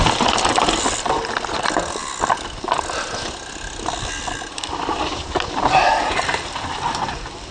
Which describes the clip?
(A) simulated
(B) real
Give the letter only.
B